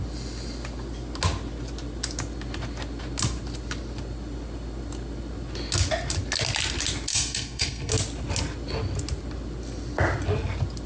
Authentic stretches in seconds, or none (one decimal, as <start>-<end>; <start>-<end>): 0.0-7.1; 7.9-10.9